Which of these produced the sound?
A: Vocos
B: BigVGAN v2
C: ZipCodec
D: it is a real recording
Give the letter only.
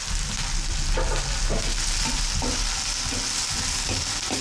D